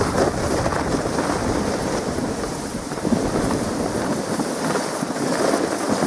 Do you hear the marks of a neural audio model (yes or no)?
yes